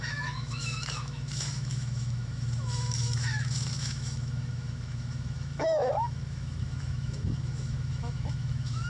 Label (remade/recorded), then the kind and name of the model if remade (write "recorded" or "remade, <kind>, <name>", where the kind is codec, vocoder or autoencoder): remade, autoencoder, DAC-VAE